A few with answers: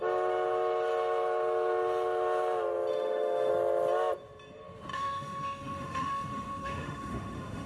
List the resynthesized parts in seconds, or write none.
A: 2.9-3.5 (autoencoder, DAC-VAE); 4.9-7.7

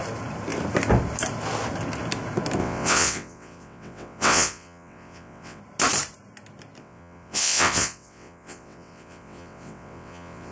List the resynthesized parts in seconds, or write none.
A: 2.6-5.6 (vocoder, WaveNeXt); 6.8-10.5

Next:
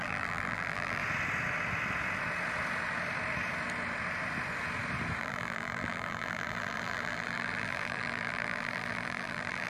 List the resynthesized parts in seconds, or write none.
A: 0.0-1.0 (vocoder, BigVGAN v2); 5.2-9.7